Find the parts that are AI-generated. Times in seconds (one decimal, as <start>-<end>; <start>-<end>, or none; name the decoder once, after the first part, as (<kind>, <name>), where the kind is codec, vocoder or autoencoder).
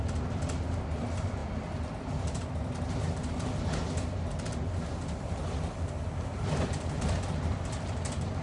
none